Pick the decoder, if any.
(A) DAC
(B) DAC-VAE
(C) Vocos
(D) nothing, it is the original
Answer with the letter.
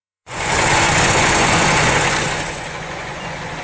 C